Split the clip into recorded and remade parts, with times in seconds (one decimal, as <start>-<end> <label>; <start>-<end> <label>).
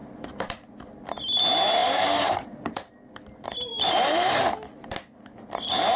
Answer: 0.0-0.7 remade; 0.7-1.8 recorded; 1.8-2.9 remade; 2.9-3.7 recorded; 3.7-4.3 remade; 4.3-6.0 recorded